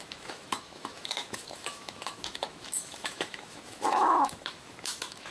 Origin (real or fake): fake